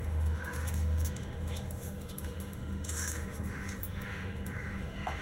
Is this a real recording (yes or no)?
no